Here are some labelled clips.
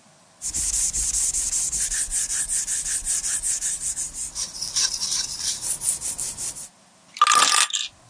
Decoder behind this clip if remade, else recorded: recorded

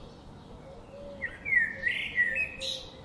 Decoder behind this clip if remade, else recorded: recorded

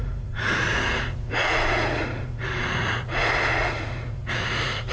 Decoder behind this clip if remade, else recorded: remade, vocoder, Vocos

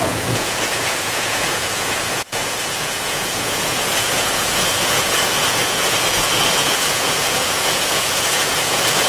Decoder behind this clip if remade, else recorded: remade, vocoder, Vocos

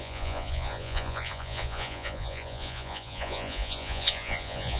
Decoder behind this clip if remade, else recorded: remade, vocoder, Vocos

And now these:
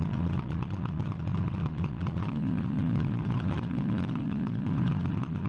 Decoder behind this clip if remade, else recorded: remade, vocoder, Vocos